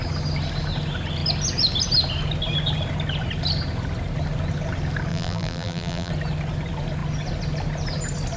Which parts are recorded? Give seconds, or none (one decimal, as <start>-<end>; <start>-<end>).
0.0-5.1; 6.1-8.4

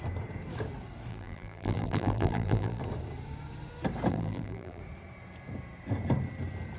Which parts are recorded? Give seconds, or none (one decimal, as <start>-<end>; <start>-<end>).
0.0-1.1; 2.8-4.1; 4.8-6.8

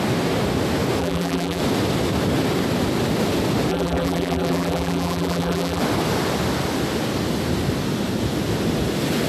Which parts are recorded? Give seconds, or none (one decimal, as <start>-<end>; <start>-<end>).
0.0-1.0; 1.6-3.7; 5.8-9.3

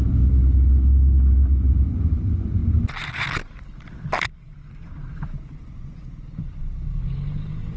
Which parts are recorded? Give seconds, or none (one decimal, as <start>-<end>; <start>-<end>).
0.0-2.6; 6.6-7.8

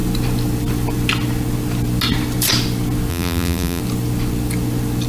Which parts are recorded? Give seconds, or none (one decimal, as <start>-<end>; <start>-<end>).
0.0-3.1; 3.8-5.1

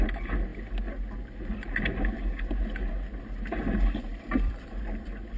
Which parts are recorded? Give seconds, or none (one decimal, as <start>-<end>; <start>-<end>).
0.0-4.1; 4.8-5.4

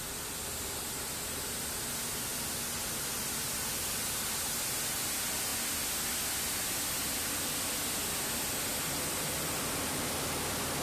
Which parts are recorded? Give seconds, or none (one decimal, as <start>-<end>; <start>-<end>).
0.0-10.8